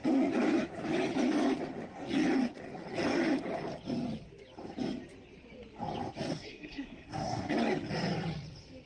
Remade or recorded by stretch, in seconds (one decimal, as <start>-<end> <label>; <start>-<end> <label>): 0.0-6.3 recorded; 6.3-7.5 remade; 7.5-8.9 recorded